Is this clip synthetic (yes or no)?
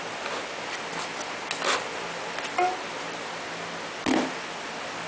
no